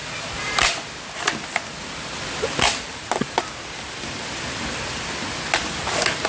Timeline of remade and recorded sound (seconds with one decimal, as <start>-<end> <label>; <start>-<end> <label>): 0.0-6.3 recorded

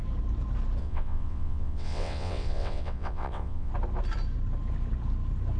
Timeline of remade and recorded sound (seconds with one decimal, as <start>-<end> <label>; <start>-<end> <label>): 0.0-0.8 recorded; 0.8-3.7 remade; 3.7-5.6 recorded

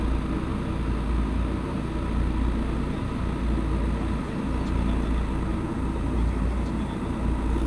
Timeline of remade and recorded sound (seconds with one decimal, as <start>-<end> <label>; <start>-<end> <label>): 0.0-5.5 recorded; 5.5-7.0 remade; 7.0-7.7 recorded

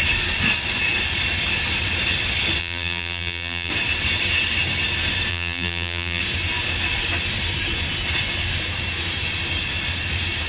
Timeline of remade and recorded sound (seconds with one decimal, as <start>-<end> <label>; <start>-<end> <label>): 0.0-2.6 recorded; 2.6-3.7 remade; 3.7-5.3 recorded; 5.3-6.2 remade; 6.2-10.5 recorded

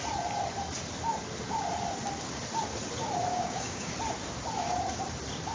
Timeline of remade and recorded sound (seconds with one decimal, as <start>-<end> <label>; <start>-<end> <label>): 0.0-3.3 recorded; 3.3-3.9 remade; 3.9-5.5 recorded

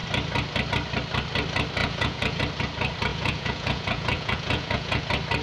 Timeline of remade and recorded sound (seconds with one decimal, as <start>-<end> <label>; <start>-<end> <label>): 0.0-1.8 recorded; 1.8-2.4 remade; 2.4-3.1 recorded; 3.1-5.0 remade; 5.0-5.4 recorded

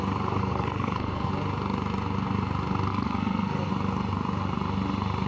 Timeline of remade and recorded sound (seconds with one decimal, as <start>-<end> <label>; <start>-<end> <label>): 0.0-0.4 recorded; 0.4-1.3 remade; 1.3-2.9 recorded; 2.9-3.7 remade; 3.7-5.3 recorded

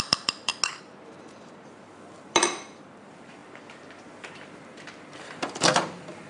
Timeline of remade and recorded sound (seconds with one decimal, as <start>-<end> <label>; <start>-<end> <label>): 0.0-0.5 remade; 0.5-1.4 recorded; 1.4-6.3 remade